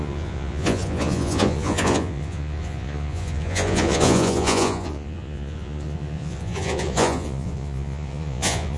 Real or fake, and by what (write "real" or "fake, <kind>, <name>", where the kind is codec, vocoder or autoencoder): fake, vocoder, Vocos